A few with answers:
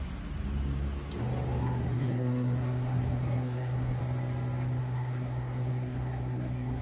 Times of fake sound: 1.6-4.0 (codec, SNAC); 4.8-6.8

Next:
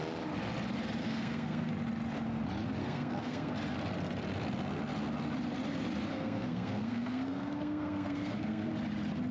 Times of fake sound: 1.0-1.7 (codec, SNAC); 2.8-3.5; 6.1-8.7

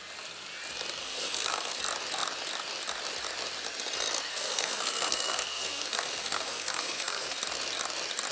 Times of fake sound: 1.0-1.8 (codec, SNAC); 4.3-7.4